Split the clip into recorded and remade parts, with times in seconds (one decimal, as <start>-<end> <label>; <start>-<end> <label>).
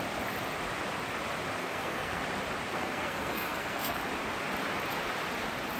0.0-1.6 recorded; 1.6-2.2 remade; 2.2-2.7 recorded; 2.7-4.0 remade; 4.0-5.8 recorded